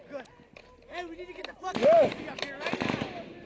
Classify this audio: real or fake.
real